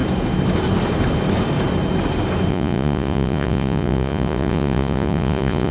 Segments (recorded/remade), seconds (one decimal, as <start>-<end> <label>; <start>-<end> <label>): 0.0-2.5 recorded; 2.5-5.7 remade